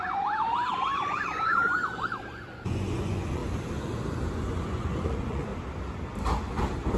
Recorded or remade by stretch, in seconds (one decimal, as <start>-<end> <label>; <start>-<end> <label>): 0.0-3.4 remade; 3.4-4.3 recorded; 4.3-5.5 remade; 5.5-7.0 recorded